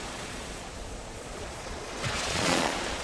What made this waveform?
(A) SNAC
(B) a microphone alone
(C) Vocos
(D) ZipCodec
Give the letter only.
C